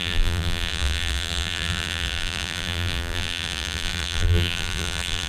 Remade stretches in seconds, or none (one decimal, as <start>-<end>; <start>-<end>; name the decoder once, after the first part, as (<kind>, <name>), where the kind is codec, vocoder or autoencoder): 0.0-5.3 (vocoder, BigVGAN v2)